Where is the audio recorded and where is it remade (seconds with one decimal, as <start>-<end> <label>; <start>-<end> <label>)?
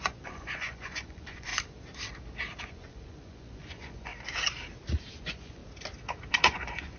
0.0-1.5 remade; 1.5-2.6 recorded; 2.6-4.1 remade; 4.1-5.1 recorded; 5.1-5.6 remade; 5.6-6.3 recorded; 6.3-7.0 remade